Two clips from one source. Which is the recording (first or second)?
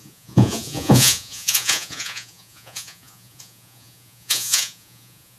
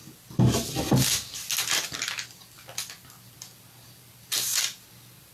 second